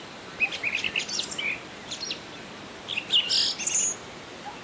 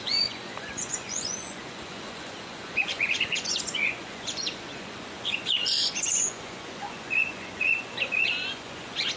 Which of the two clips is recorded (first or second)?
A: first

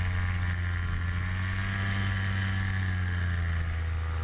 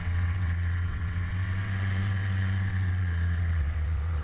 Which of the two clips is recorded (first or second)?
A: first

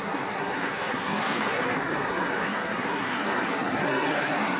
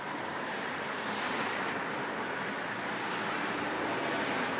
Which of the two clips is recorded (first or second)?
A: second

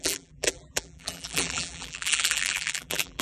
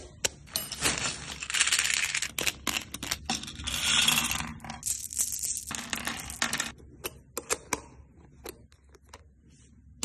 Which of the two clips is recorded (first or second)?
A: second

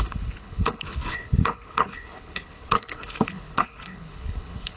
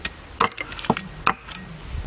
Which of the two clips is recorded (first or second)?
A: second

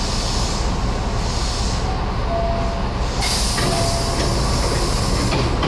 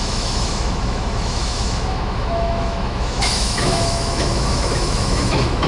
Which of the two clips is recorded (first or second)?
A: first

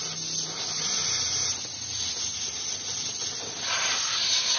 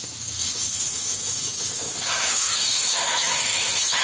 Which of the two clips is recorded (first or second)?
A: first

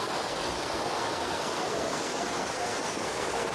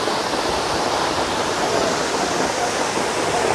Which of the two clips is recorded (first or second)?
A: second